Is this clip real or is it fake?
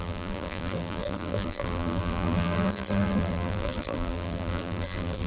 fake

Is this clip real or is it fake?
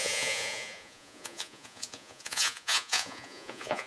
fake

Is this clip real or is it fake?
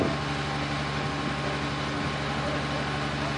real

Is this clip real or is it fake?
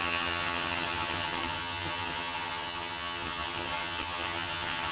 fake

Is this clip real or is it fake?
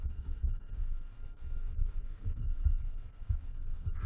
fake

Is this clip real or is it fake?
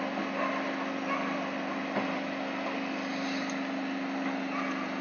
real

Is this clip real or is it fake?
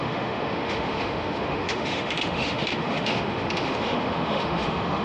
fake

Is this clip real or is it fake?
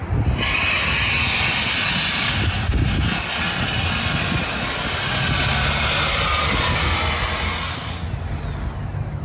real